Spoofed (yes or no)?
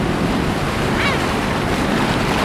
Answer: yes